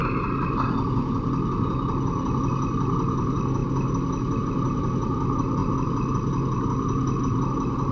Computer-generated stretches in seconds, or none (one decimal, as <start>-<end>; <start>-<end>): none

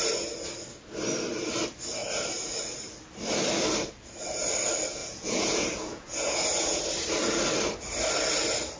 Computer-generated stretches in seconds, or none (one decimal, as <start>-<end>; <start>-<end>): 5.0-6.8